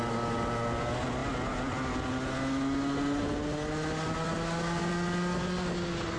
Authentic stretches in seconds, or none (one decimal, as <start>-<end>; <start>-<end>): 0.0-6.2